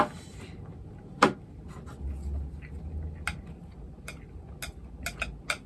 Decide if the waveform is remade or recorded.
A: recorded